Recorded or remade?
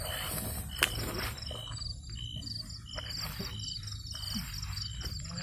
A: recorded